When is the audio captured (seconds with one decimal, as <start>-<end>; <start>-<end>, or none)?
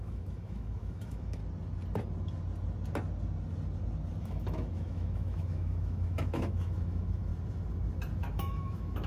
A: 1.4-4.2; 7.3-8.2